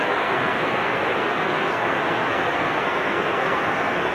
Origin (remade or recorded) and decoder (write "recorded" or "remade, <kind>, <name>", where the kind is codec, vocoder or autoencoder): remade, codec, SNAC